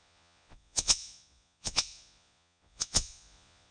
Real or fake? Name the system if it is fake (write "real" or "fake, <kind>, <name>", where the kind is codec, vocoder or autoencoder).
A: fake, vocoder, Vocos